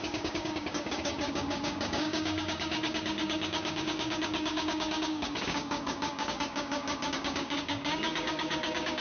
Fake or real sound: fake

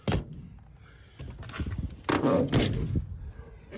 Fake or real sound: real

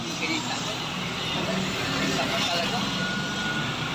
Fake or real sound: real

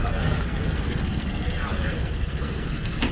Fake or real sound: fake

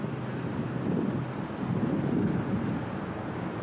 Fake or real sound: real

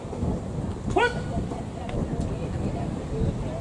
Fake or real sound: real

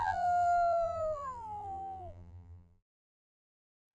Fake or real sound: fake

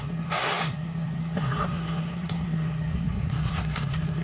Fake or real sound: fake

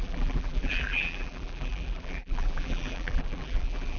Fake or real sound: fake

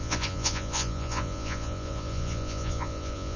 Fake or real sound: fake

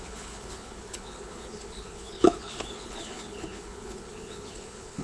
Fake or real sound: fake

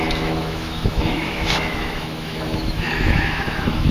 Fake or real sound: fake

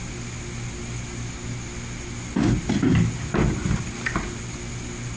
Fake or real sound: real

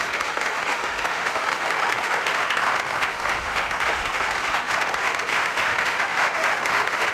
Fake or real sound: fake